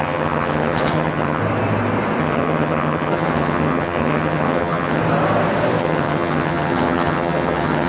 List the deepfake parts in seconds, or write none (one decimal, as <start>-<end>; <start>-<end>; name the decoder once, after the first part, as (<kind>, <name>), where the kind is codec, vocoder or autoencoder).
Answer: 0.0-1.4 (vocoder, HiFi-GAN); 2.2-5.0; 5.8-7.9